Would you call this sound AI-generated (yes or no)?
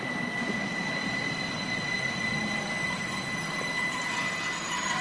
no